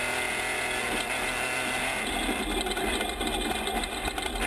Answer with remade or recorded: recorded